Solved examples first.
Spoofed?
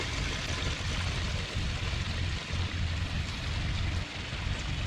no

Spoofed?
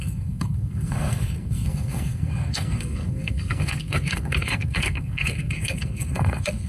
yes